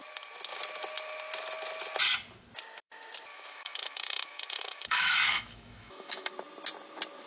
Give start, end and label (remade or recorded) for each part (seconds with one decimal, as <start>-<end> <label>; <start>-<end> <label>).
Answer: 0.0-3.3 recorded; 3.3-6.3 remade; 6.3-7.3 recorded